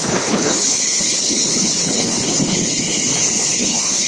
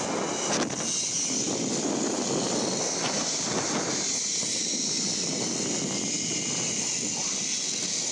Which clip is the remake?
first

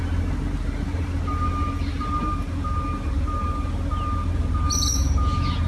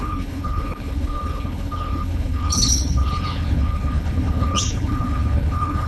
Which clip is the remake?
second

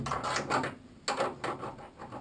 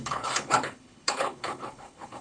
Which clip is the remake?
second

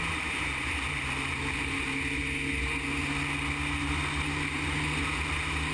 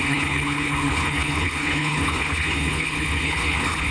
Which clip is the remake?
second